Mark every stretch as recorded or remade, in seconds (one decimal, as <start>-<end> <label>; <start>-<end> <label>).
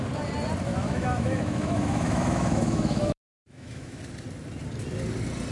0.0-0.7 recorded; 0.7-4.0 remade; 4.0-5.5 recorded